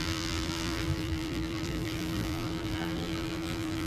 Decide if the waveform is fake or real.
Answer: fake